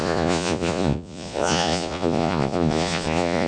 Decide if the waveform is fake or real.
fake